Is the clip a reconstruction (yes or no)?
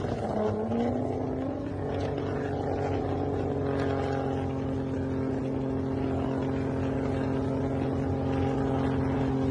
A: no